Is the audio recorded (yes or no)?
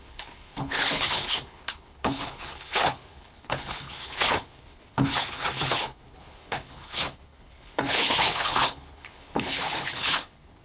no